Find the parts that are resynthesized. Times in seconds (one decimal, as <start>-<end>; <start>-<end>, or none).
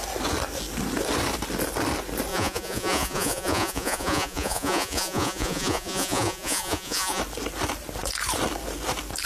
2.3-7.2